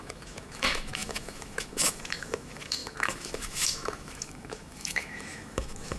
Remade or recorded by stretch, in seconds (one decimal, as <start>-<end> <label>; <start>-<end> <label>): 0.0-6.0 remade